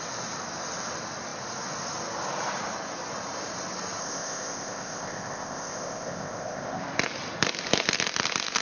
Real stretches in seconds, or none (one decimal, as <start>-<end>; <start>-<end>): 0.0-4.0; 6.8-8.6

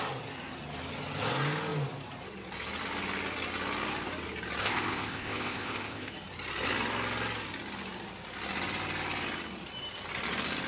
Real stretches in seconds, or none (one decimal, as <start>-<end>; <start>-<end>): 0.0-4.6; 6.1-10.7

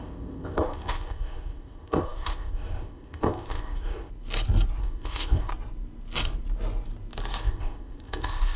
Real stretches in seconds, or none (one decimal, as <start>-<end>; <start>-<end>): 4.1-4.8; 5.5-7.4

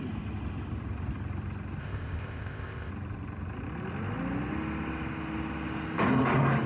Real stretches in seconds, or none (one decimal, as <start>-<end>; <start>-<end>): 0.0-1.8; 2.9-6.7

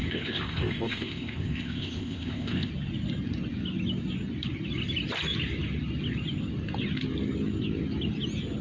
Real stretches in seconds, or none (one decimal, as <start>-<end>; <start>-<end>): 2.7-8.6

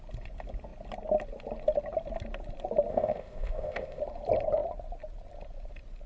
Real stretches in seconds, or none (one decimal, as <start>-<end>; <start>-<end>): 0.0-2.9; 4.0-6.1